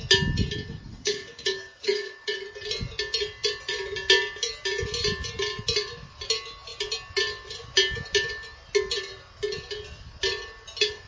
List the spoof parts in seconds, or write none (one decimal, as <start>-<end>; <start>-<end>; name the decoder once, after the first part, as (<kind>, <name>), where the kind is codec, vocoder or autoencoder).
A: 0.9-2.1 (codec, DAC)